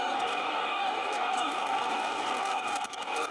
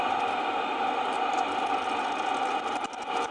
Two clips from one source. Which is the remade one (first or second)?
first